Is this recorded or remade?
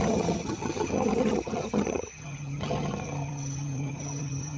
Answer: remade